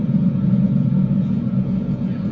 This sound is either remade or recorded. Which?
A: remade